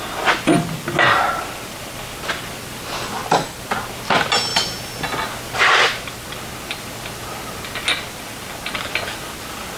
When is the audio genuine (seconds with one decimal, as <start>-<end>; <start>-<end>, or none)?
0.0-3.2; 3.8-9.8